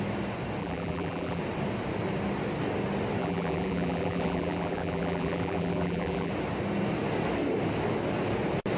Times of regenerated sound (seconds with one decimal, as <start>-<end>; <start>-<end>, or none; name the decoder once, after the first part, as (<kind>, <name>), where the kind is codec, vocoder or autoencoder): 0.6-1.4 (vocoder, BigVGAN v2); 3.2-6.3

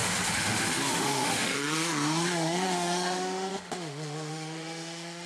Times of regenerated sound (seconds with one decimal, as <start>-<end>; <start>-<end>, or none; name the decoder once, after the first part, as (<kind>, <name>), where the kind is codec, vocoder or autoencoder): 0.0-5.3 (autoencoder, DAC-VAE)

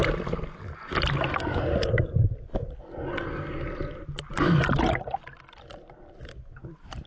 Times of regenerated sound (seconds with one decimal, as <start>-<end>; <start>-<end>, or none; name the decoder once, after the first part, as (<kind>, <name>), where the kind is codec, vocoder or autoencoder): none

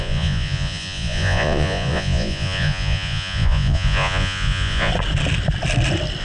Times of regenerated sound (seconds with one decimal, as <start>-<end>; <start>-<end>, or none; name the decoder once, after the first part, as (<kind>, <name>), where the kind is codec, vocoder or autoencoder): 0.0-4.9 (vocoder, Vocos)

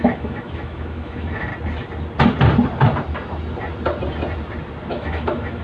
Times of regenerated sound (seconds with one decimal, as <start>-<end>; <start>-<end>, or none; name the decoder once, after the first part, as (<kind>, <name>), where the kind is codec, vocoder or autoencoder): 0.0-1.5 (autoencoder, DAC-VAE); 4.9-5.6

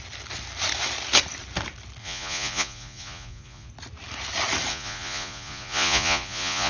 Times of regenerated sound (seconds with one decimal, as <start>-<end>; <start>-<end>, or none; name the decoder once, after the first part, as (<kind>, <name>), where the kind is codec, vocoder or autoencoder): 2.0-3.7 (vocoder, Vocos); 4.7-6.7

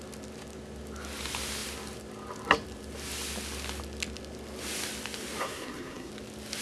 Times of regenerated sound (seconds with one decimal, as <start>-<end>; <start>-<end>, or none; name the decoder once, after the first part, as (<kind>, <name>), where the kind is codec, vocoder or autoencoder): 5.4-6.1 (codec, SNAC)

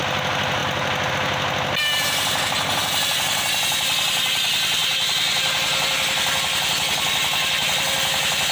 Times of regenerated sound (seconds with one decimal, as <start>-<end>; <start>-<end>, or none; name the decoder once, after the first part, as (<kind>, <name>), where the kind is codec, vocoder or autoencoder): none